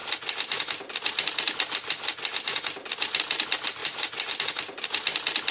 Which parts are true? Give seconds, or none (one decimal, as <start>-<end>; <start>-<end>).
0.0-3.8; 4.4-5.5